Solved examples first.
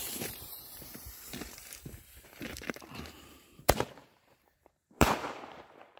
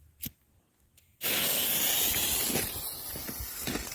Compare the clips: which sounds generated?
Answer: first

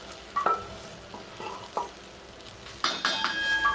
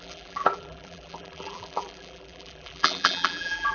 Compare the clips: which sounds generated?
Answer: second